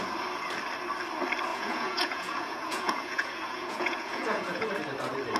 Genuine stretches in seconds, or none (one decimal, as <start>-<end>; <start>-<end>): 0.0-1.5; 4.7-5.4